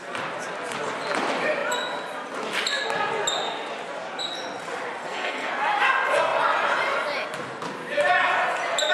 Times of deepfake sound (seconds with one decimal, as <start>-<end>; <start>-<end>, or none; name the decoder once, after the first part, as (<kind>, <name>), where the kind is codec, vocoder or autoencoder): 5.0-5.5 (codec, SNAC)